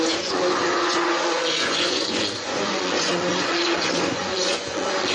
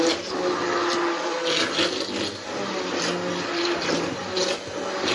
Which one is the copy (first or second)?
first